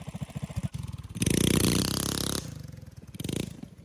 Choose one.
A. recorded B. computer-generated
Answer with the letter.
A